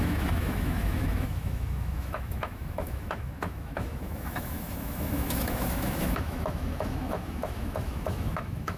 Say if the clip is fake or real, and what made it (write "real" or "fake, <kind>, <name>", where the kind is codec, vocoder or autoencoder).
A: fake, autoencoder, DAC-VAE